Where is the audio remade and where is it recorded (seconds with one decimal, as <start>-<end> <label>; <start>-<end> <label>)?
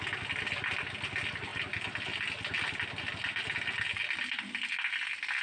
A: 0.0-5.4 recorded